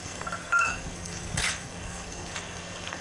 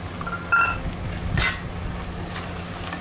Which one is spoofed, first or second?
first